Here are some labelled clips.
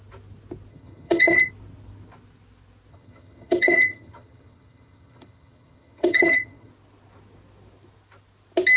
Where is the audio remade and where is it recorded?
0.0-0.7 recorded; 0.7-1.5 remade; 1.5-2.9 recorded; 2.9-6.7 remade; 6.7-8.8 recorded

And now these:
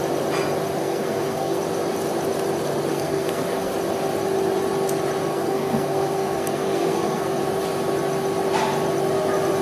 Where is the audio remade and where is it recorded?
0.0-0.8 recorded; 0.8-1.6 remade; 1.6-2.9 recorded; 2.9-3.7 remade; 3.7-5.3 recorded; 5.3-7.4 remade; 7.4-9.6 recorded

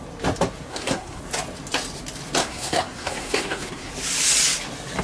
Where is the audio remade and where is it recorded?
0.0-0.7 recorded; 0.7-1.2 remade; 1.2-2.4 recorded; 2.4-3.9 remade; 3.9-5.0 recorded